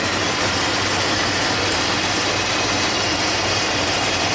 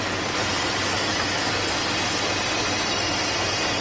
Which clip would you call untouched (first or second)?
second